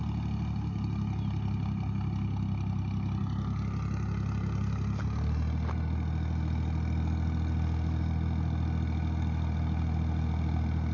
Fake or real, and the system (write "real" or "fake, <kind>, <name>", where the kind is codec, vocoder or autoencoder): real